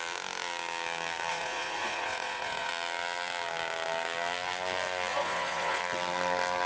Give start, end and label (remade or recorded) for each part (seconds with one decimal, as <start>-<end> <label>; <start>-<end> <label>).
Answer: 0.0-1.3 recorded; 1.3-2.7 remade; 2.7-5.1 recorded; 5.1-5.8 remade; 5.8-6.7 recorded